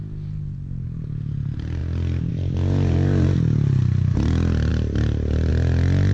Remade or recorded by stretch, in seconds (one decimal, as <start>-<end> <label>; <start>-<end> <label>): 0.0-6.1 recorded